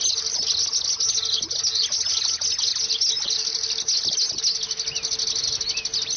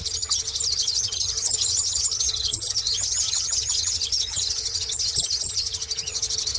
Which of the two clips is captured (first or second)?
first